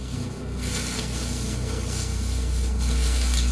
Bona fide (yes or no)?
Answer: no